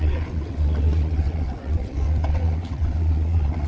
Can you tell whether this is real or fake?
fake